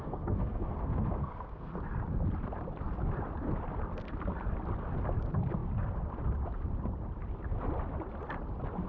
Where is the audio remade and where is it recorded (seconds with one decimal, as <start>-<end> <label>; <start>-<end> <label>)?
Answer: 0.0-1.7 remade; 1.7-8.9 recorded